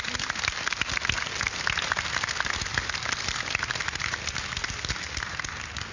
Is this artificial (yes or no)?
no